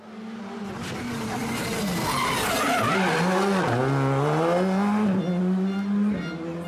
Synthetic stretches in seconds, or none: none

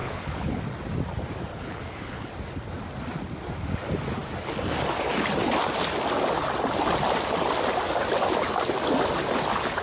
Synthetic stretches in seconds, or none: 0.0-0.6 (codec, HILCodec); 1.5-2.3